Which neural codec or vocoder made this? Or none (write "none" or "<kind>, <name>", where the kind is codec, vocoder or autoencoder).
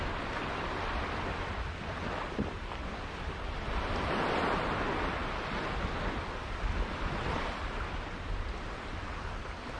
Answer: none